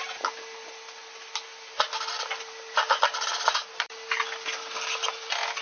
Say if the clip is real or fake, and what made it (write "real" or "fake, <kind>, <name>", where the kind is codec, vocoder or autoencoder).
real